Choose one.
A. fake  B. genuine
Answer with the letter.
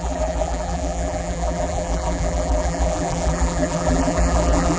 A